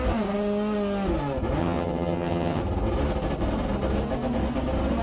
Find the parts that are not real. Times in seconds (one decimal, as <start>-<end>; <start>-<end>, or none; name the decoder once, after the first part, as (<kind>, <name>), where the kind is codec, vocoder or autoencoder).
1.6-2.6 (vocoder, HiFi-GAN)